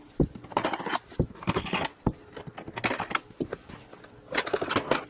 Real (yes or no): yes